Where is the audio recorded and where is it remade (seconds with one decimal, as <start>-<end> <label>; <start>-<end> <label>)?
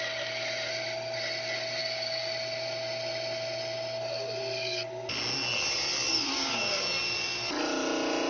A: 0.0-1.8 recorded; 1.8-2.3 remade; 2.3-6.1 recorded; 6.1-6.8 remade; 6.8-8.3 recorded